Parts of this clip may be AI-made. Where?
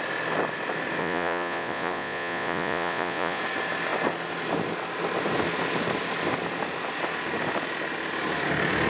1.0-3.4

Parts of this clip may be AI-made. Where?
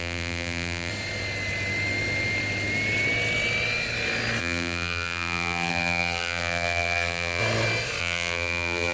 0.0-0.9; 4.4-7.4; 8.0-8.9